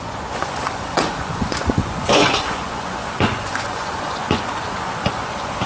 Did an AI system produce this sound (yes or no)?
yes